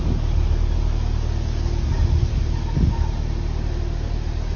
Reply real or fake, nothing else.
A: real